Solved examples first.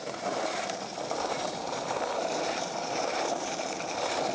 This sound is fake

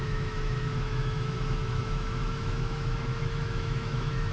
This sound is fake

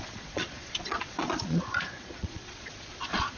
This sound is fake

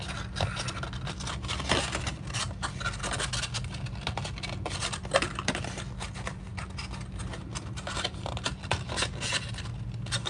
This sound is real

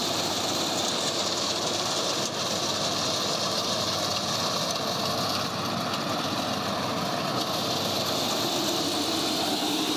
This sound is real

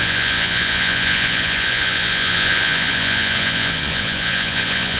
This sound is fake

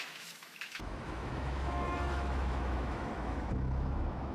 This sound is fake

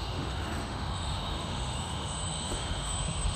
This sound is fake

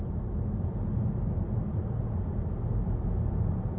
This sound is real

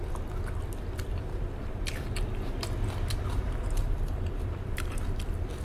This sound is fake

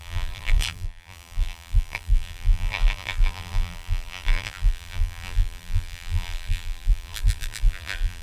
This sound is fake